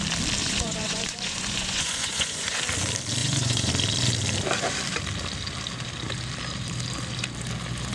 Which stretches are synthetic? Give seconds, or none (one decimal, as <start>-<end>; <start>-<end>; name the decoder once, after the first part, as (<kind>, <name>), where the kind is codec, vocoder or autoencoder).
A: 0.4-2.6 (vocoder, Vocos); 3.2-3.7

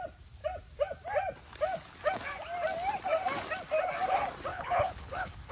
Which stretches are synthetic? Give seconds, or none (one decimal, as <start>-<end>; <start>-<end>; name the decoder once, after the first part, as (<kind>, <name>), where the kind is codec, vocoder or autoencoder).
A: 4.5-5.5 (codec, HILCodec)

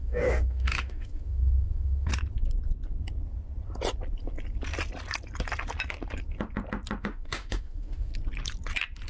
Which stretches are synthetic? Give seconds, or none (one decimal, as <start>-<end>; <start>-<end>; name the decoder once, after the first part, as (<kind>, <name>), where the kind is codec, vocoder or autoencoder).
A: 0.0-2.1 (autoencoder, DAC-VAE); 7.0-8.1